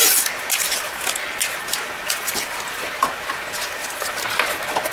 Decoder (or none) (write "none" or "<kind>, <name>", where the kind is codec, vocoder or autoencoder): none